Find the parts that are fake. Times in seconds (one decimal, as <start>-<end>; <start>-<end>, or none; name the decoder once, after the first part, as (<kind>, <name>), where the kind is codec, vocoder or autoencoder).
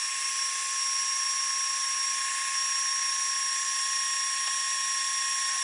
none